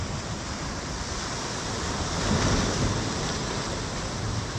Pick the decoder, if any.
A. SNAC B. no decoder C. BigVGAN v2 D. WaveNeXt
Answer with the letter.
B